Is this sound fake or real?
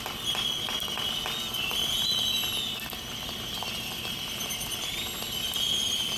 real